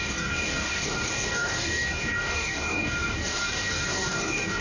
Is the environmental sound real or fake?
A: fake